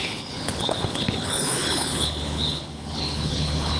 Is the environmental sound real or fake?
fake